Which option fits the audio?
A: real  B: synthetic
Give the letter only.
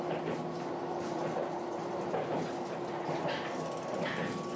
A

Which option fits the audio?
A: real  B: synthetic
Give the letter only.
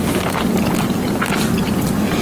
A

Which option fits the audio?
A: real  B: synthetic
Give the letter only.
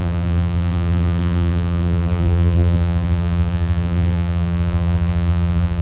B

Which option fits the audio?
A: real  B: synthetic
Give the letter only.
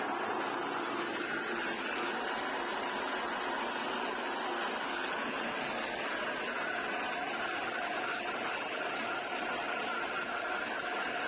A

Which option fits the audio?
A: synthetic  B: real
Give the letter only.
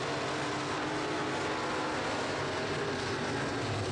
B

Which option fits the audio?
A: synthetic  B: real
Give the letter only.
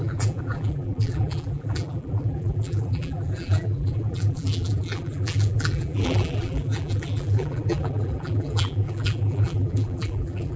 A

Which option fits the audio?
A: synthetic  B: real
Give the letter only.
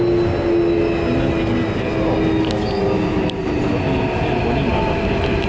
B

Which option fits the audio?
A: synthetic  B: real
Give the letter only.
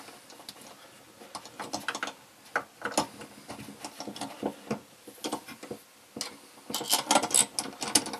B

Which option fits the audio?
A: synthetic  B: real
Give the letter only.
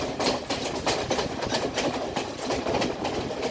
B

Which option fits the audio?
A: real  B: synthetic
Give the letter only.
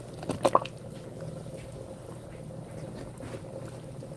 A